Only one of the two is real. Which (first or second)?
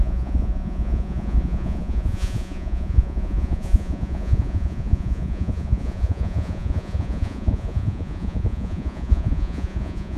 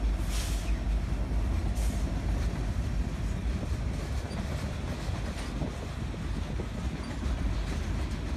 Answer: second